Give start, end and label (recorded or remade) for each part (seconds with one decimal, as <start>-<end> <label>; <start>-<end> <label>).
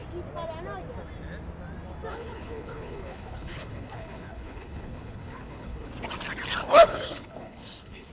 0.0-2.1 recorded; 2.1-5.9 remade; 5.9-6.6 recorded; 6.6-8.1 remade